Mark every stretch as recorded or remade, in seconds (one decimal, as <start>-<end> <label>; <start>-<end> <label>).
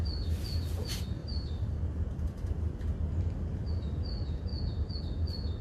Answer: 0.0-1.2 recorded; 1.2-3.7 remade; 3.7-5.6 recorded